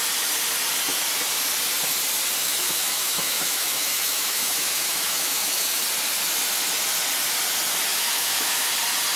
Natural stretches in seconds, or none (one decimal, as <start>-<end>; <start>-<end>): 0.0-2.4; 5.8-7.9; 8.7-9.2